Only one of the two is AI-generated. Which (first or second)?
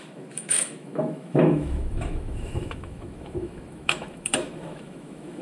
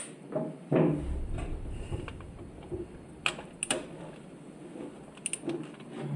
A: first